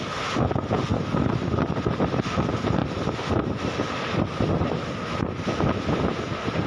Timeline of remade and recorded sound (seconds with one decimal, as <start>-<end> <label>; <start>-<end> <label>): 0.0-0.9 recorded; 0.9-1.4 remade; 1.4-2.8 recorded; 2.8-4.8 remade; 4.8-6.7 recorded